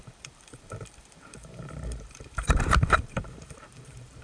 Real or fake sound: fake